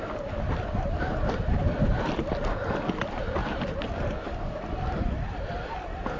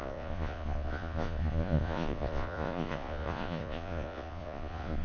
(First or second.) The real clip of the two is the first